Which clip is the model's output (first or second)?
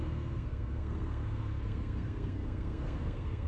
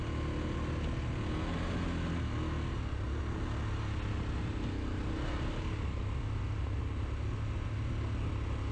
first